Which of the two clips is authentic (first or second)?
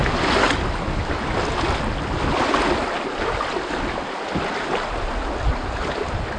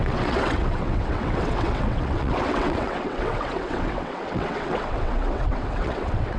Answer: first